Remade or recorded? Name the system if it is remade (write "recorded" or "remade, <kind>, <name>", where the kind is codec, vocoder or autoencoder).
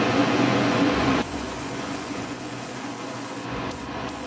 remade, vocoder, Vocos